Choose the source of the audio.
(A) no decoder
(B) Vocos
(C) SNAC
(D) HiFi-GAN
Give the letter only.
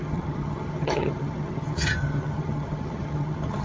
D